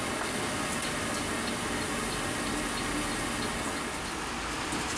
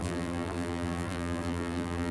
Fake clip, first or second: second